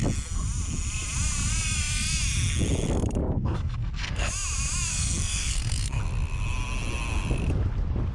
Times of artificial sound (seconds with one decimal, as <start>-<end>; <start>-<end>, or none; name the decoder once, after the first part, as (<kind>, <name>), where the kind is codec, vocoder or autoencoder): 3.2-4.3 (codec, SNAC); 4.9-6.0